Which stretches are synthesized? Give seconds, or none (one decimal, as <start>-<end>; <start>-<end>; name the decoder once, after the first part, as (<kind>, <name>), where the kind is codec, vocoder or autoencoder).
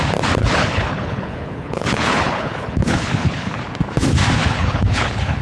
0.4-3.6 (codec, HILCodec); 4.4-5.4